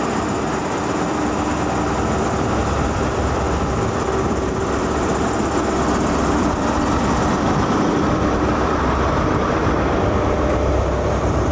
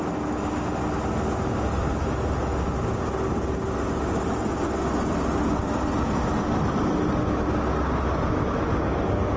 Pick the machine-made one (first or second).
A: first